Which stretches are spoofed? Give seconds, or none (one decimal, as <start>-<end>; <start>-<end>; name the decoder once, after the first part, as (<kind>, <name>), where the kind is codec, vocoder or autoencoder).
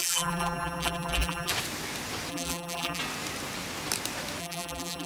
0.0-1.5 (vocoder, BigVGAN v2); 2.3-3.0; 4.4-5.1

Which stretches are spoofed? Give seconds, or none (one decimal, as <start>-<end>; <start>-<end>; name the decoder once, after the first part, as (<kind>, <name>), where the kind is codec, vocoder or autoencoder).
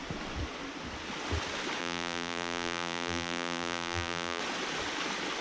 1.8-4.4 (vocoder, BigVGAN v2)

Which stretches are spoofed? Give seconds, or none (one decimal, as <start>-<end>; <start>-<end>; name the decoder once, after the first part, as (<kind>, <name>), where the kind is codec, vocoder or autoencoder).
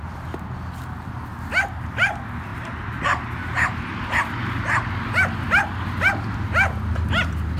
none